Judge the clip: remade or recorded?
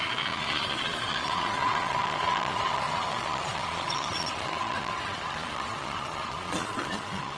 remade